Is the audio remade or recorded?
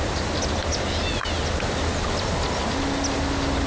recorded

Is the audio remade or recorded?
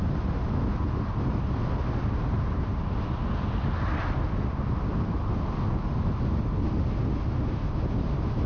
recorded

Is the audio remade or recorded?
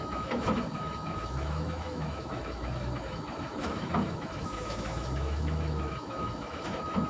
remade